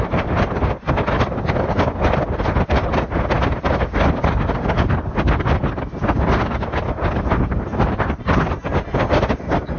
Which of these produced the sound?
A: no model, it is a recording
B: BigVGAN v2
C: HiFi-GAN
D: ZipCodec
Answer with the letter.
A